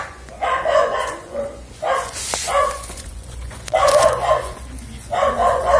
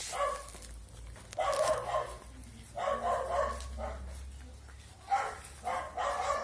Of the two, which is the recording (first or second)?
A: second